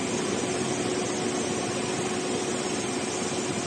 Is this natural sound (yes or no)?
yes